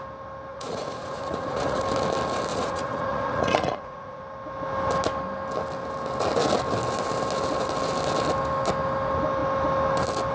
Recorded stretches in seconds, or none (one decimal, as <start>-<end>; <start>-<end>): 0.0-0.5; 1.8-2.5; 4.2-10.3